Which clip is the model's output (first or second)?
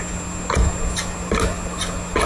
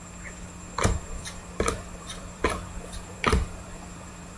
second